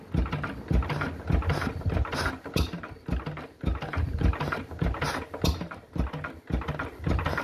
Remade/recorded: recorded